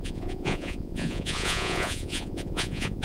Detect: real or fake fake